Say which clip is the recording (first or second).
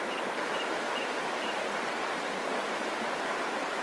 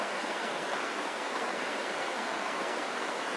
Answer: first